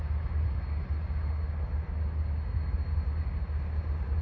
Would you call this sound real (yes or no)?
yes